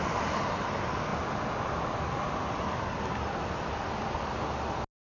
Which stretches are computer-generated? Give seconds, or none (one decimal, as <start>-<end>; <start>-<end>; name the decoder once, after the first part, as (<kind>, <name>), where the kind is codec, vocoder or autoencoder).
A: none